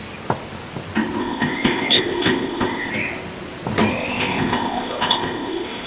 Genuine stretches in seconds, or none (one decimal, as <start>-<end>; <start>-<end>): 0.0-1.2; 2.9-3.9